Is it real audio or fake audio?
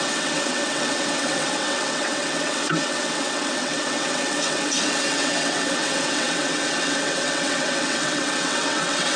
fake